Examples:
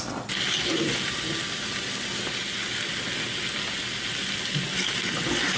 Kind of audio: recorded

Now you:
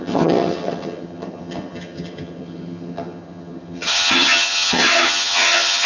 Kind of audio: remade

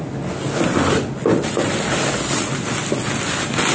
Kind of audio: recorded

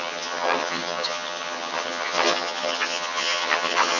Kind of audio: remade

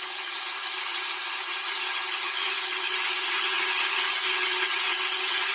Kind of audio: remade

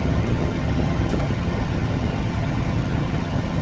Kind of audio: remade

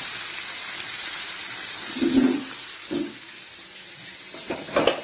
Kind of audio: recorded